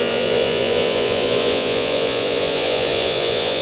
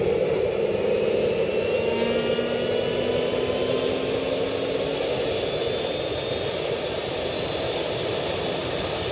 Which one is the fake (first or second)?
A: first